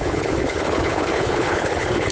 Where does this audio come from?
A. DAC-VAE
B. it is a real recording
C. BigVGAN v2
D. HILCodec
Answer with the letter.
D